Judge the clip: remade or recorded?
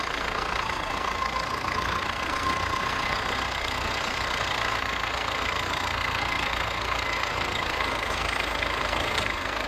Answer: remade